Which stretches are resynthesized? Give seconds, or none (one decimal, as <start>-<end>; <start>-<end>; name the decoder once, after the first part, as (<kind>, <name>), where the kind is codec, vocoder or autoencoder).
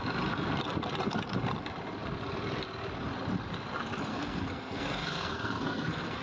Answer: 4.1-6.2 (codec, SNAC)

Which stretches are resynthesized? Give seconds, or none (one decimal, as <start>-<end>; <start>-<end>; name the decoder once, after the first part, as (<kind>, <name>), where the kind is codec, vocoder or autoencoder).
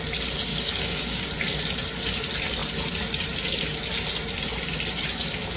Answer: 0.5-1.3 (codec, DAC)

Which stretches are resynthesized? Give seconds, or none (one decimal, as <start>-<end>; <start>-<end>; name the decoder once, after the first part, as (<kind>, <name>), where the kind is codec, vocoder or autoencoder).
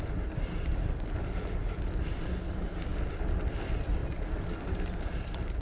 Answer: none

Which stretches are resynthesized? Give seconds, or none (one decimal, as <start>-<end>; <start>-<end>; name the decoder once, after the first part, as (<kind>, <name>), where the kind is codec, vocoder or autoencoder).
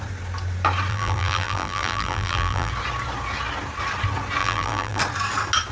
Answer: 0.9-2.7 (vocoder, BigVGAN v2); 4.4-5.0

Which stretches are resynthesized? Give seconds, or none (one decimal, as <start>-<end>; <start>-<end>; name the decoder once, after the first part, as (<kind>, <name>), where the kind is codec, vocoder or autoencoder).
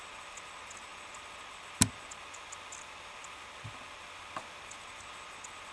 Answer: none